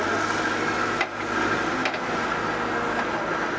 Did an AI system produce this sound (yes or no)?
no